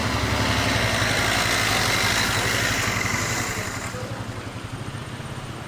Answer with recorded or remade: recorded